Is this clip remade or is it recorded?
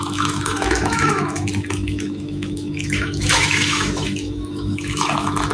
remade